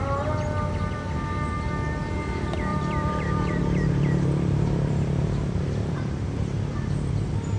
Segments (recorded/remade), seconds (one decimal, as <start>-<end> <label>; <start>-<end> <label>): 0.0-2.7 recorded; 2.7-7.6 remade